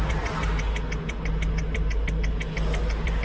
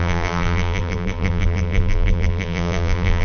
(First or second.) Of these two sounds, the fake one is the second